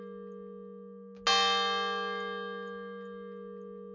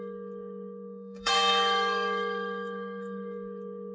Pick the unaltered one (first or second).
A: first